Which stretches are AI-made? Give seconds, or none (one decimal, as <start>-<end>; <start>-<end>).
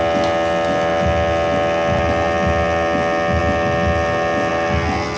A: none